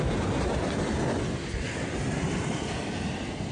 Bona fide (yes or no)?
yes